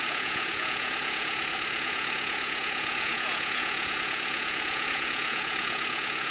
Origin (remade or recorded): remade